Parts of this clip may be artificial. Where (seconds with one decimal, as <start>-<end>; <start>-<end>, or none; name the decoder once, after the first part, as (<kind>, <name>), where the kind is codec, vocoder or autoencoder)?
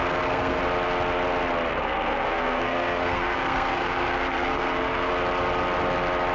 0.0-0.6 (codec, SNAC); 1.7-5.1